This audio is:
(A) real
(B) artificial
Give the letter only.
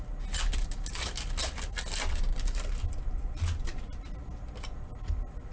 A